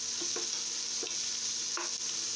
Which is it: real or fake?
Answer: real